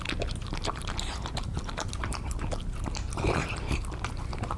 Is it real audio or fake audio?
real